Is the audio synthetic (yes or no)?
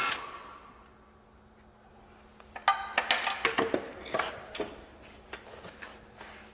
no